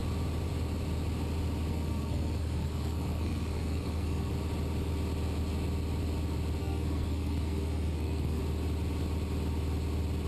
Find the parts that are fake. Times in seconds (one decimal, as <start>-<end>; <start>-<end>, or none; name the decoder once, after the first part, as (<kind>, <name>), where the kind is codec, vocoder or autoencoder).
1.7-4.3 (codec, SNAC); 6.6-8.4